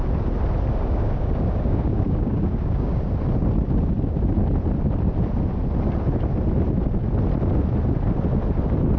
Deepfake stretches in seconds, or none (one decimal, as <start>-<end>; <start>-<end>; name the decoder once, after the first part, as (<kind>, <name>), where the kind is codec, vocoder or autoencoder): 0.8-3.1 (codec, DAC)